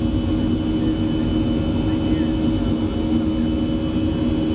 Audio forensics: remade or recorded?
recorded